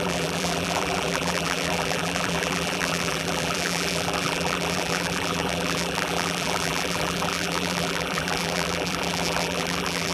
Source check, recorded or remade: remade